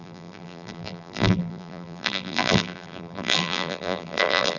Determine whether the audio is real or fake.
fake